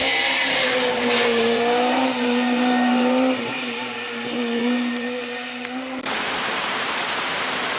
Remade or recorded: remade